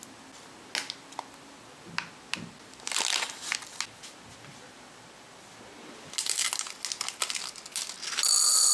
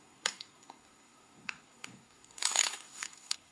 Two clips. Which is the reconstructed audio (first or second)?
second